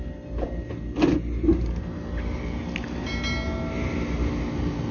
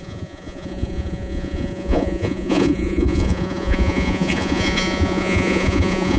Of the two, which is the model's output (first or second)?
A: second